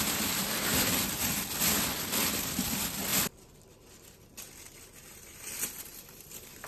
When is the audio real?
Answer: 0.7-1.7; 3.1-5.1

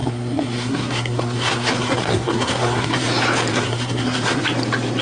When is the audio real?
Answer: 3.0-3.5; 4.4-5.0